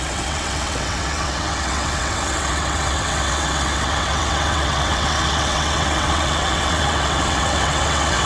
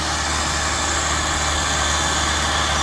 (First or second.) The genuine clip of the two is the second